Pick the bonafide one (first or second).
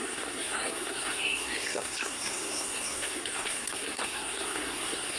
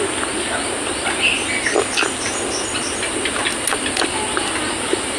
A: second